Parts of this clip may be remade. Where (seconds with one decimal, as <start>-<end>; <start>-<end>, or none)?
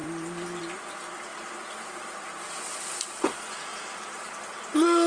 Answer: none